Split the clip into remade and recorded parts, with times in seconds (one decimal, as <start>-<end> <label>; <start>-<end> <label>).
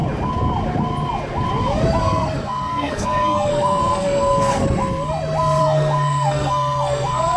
0.0-2.0 recorded; 2.0-4.6 remade; 4.6-5.6 recorded; 5.6-7.4 remade